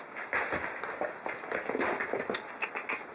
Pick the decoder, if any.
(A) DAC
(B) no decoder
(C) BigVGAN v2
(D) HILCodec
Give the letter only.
B